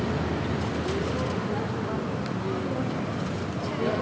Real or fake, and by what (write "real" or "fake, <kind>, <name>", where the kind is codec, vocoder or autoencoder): real